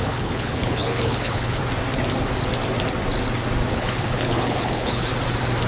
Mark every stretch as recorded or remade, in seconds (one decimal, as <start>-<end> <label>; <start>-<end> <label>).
0.0-1.6 remade; 1.6-3.7 recorded; 3.7-5.1 remade; 5.1-5.7 recorded